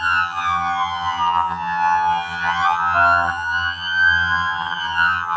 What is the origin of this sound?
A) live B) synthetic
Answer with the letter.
B